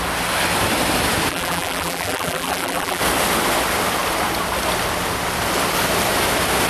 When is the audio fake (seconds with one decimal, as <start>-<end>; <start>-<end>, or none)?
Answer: 1.3-3.0

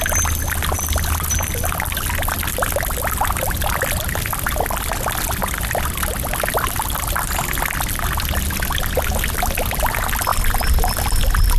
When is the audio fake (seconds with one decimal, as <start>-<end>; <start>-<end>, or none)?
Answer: none